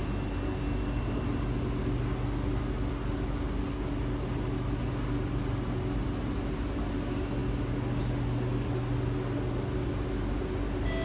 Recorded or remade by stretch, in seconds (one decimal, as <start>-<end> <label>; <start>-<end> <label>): 0.0-11.0 recorded